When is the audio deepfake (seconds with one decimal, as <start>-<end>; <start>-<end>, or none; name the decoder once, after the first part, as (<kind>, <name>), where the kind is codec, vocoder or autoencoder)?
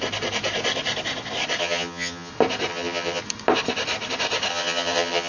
1.6-2.3 (vocoder, HiFi-GAN); 2.7-3.2; 4.5-5.3